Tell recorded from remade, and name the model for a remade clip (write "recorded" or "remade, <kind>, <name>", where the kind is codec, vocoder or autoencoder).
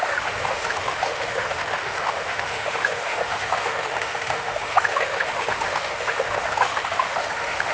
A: remade, autoencoder, DAC-VAE